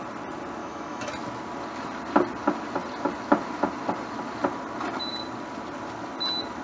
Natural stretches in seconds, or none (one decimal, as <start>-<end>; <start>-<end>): 0.0-0.6; 1.1-6.6